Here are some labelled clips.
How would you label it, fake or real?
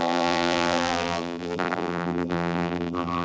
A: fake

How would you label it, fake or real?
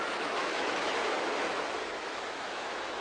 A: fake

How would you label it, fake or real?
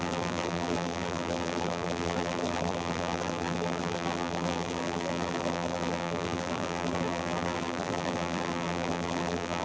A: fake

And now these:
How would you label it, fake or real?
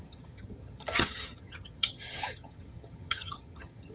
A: fake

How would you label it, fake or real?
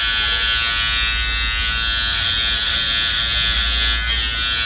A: real